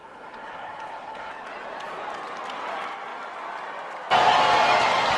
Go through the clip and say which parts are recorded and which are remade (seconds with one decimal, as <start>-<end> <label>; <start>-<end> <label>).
0.0-1.3 remade; 1.3-5.2 recorded